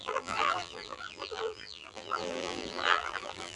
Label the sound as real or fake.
fake